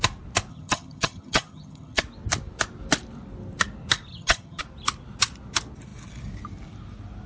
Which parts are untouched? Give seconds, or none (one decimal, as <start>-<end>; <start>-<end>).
0.0-0.5; 2.0-4.1; 4.6-7.3